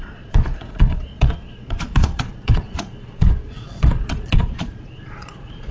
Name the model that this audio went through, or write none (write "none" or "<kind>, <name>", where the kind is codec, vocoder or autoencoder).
vocoder, Vocos